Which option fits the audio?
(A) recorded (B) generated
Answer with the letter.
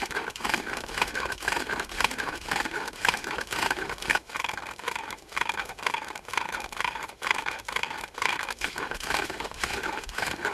B